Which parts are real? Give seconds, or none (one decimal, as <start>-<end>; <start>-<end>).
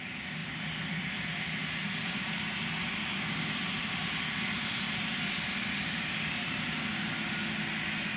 0.0-3.0; 3.6-8.2